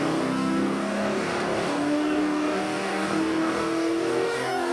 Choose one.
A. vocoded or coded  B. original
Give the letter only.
A